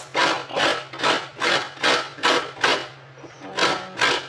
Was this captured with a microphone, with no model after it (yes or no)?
yes